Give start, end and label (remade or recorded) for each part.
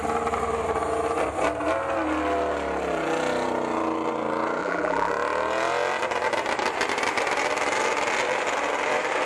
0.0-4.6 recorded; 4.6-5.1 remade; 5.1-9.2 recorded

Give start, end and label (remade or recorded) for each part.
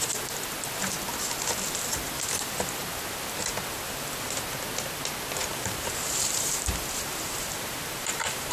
0.0-5.4 recorded; 5.4-8.5 remade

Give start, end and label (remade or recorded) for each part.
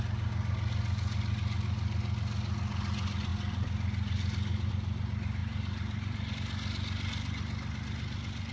0.0-5.4 recorded; 5.4-6.3 remade; 6.3-8.5 recorded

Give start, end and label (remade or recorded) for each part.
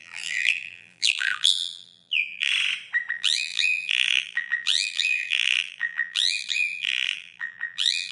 0.0-2.5 remade; 2.5-3.1 recorded; 3.1-8.1 remade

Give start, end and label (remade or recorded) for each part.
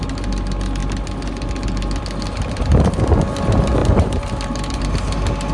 0.0-3.8 recorded; 3.8-4.8 remade; 4.8-5.5 recorded